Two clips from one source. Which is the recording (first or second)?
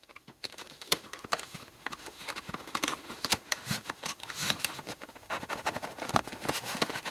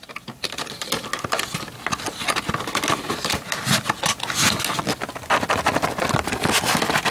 second